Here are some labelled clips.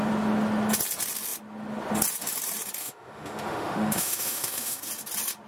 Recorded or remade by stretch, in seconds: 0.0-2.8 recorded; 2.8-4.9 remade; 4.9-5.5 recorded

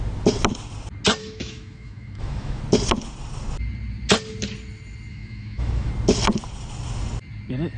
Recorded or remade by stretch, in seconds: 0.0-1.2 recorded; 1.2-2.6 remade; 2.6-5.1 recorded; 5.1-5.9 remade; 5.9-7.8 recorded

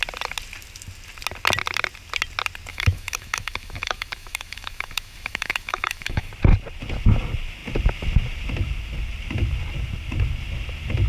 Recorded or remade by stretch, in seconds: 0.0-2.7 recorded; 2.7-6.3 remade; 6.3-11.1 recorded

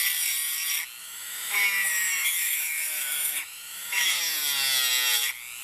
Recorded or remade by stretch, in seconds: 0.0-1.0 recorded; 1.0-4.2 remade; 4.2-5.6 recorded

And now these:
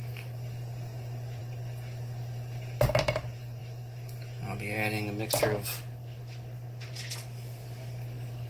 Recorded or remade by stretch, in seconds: 0.0-8.5 recorded